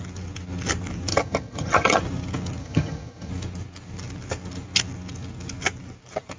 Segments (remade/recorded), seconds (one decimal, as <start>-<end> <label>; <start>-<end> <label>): 0.0-1.1 recorded; 1.1-2.0 remade; 2.0-2.6 recorded; 2.6-3.3 remade; 3.3-6.4 recorded